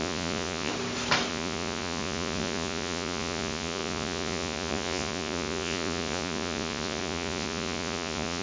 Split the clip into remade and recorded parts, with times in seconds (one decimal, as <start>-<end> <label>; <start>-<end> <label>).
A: 0.0-0.7 remade; 0.7-1.3 recorded; 1.3-8.4 remade